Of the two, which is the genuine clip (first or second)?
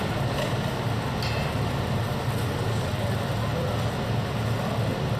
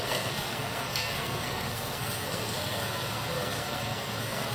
first